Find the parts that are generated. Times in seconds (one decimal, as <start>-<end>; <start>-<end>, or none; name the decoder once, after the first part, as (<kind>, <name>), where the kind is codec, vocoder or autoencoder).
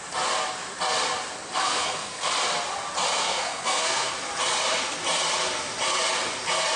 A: 1.6-2.3 (codec, SNAC); 3.2-4.1